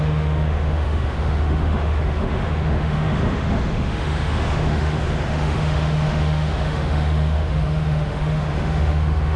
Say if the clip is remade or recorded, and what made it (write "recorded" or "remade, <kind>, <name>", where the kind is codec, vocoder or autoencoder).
remade, autoencoder, DAC-VAE